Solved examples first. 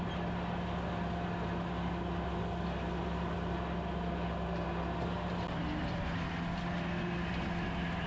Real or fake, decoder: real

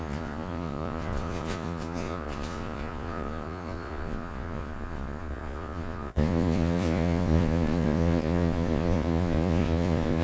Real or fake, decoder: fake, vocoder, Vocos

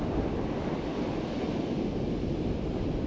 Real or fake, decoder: real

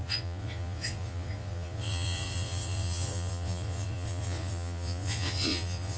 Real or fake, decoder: fake, vocoder, Vocos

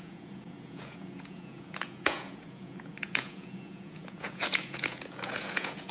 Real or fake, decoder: fake, vocoder, Vocos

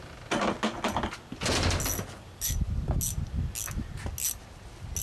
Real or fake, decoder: real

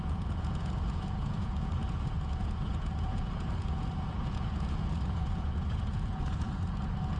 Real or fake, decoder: fake, vocoder, Vocos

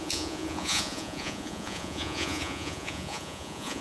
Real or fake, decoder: fake, vocoder, Vocos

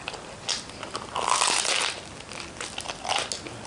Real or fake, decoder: real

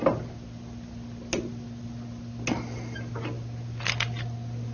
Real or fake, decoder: real